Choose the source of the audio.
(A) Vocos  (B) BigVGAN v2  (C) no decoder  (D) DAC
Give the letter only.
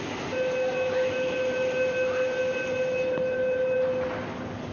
C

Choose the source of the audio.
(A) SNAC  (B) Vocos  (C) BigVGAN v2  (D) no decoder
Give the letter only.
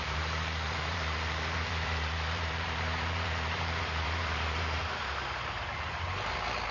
C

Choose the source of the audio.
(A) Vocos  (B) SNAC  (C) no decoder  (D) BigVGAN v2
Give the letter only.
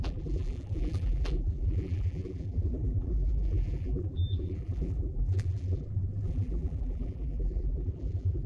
D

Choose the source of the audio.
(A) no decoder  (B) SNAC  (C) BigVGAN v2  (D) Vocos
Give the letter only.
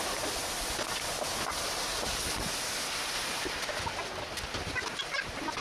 A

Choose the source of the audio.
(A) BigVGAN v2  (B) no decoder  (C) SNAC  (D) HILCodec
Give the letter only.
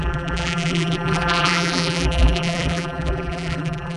A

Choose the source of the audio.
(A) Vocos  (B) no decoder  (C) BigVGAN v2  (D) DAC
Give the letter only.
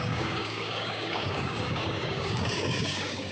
D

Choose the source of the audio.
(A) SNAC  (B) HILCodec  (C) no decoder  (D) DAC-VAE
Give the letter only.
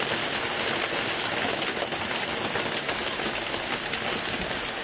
C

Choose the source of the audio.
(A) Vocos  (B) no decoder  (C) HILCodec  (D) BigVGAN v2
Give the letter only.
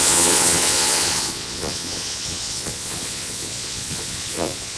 A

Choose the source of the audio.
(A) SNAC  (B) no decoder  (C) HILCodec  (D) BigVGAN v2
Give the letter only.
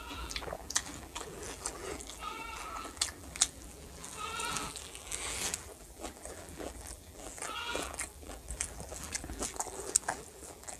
D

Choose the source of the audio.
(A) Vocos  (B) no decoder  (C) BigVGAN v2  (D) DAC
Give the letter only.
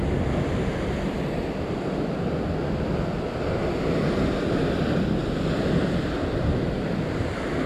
B